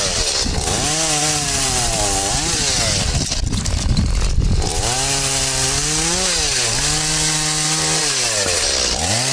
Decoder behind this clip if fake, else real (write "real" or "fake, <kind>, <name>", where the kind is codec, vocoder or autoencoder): real